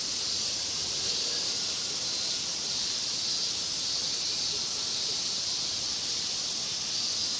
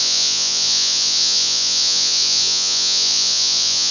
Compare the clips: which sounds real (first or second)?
first